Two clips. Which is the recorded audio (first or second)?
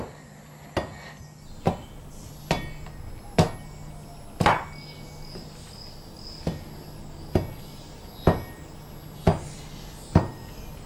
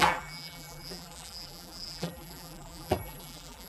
first